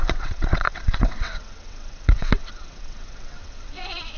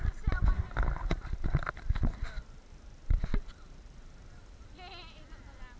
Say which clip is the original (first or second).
second